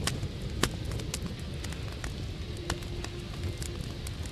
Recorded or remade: recorded